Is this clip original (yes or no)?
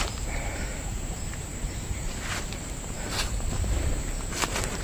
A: no